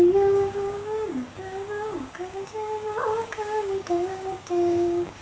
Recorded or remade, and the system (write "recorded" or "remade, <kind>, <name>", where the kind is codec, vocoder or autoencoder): remade, codec, DAC